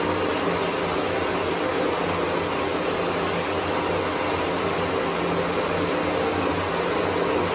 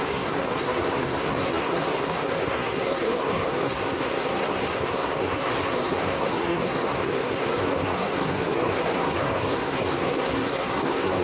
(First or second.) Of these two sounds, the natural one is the first